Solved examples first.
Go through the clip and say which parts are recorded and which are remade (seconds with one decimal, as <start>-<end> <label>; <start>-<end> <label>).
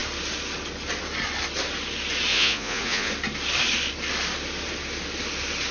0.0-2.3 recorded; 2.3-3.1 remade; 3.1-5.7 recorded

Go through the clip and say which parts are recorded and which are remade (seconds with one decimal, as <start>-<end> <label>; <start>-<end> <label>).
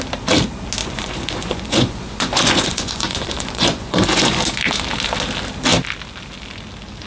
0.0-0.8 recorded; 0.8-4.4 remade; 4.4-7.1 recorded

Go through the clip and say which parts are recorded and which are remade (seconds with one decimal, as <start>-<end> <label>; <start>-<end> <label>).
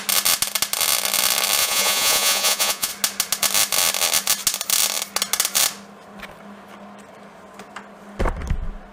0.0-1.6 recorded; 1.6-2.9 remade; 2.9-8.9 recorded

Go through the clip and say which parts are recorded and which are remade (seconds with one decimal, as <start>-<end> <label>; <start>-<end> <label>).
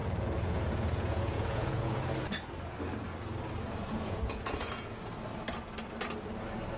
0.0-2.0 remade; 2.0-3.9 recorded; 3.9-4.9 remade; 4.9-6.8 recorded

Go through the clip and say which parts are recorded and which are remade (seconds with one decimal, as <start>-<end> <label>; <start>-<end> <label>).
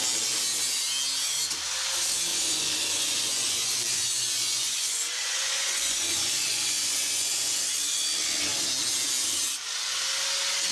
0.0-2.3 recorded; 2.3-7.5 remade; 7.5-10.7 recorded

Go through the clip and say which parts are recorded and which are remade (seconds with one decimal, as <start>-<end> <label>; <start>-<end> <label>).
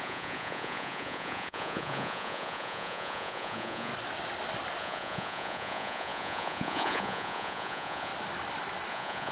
0.0-3.9 remade; 3.9-4.8 recorded; 4.8-8.1 remade; 8.1-8.9 recorded; 8.9-9.3 remade